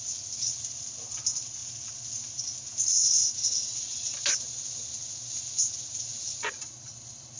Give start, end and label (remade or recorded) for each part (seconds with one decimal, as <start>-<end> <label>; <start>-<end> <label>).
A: 0.0-7.4 recorded